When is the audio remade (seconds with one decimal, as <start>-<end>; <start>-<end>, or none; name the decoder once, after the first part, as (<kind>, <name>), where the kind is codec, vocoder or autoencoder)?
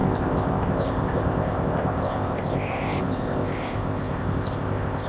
0.0-5.1 (codec, ZipCodec)